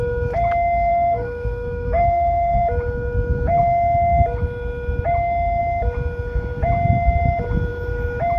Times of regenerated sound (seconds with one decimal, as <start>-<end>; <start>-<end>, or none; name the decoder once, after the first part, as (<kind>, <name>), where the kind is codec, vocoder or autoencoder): 0.9-2.6 (codec, SNAC)